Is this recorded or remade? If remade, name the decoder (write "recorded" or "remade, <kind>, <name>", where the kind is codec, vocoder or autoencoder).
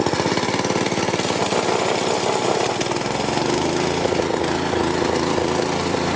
recorded